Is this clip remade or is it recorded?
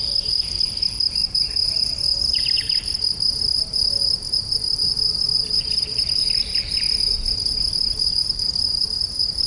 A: remade